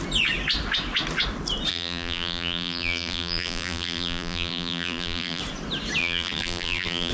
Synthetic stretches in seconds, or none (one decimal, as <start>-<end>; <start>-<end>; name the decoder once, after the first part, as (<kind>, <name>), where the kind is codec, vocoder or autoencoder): 1.7-5.4 (vocoder, BigVGAN v2); 6.0-7.1